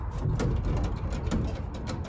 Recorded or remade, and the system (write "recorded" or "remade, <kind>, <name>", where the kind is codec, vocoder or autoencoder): recorded